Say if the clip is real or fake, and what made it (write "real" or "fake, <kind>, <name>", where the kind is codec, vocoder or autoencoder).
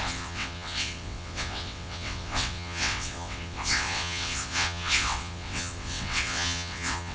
fake, vocoder, WaveNeXt